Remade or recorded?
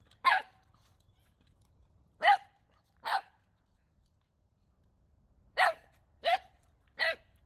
remade